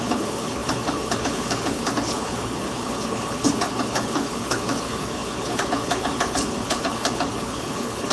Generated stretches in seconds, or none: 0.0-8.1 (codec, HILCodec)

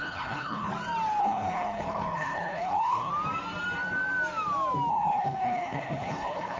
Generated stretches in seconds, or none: 0.0-0.7 (codec, HILCodec); 1.2-3.1; 4.9-6.6

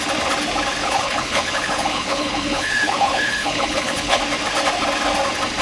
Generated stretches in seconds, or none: 0.8-4.2 (codec, HILCodec)